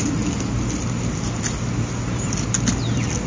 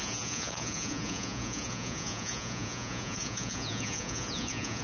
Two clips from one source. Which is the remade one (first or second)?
second